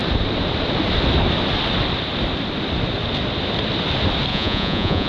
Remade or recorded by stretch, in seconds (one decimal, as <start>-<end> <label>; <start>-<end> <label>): 0.0-4.3 recorded; 4.3-5.1 remade